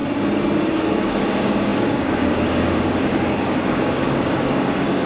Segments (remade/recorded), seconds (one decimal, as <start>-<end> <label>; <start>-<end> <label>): 0.0-0.7 recorded; 0.7-5.1 remade